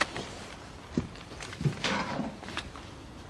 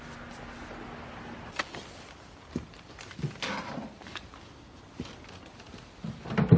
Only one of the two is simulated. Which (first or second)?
first